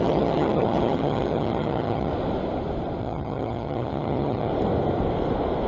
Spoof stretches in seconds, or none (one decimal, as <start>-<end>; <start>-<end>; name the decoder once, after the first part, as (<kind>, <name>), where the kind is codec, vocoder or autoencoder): 0.0-2.1 (vocoder, HiFi-GAN); 3.0-4.5